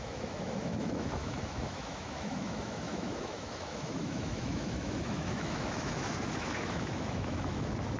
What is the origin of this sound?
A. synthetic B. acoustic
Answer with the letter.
A